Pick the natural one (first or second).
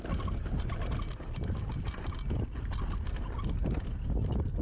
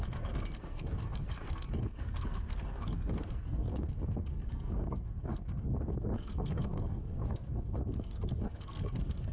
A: first